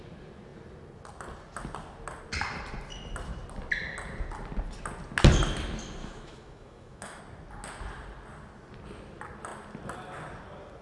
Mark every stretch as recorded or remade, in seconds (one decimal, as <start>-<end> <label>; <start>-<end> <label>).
0.0-6.0 recorded; 6.0-7.2 remade; 7.2-10.8 recorded